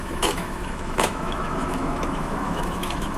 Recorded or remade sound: remade